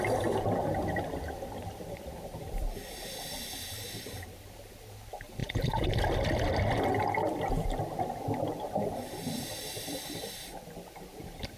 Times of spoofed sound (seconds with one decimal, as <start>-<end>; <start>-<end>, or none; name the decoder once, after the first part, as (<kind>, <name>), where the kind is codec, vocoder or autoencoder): 5.4-5.9 (vocoder, Vocos)